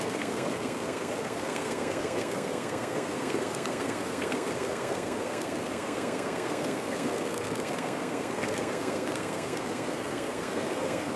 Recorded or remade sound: remade